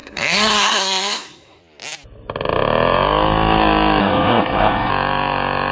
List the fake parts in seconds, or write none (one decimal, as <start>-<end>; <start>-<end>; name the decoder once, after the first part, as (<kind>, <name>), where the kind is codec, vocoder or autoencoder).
0.0-1.6 (codec, SNAC); 4.0-4.9

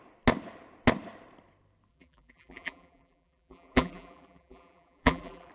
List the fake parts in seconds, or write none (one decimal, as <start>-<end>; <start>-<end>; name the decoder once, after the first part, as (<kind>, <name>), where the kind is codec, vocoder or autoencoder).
1.9-5.5 (vocoder, BigVGAN v2)

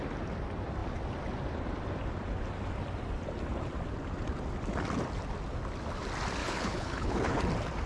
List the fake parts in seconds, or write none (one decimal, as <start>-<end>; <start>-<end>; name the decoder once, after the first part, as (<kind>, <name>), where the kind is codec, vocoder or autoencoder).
6.4-7.4 (codec, HILCodec)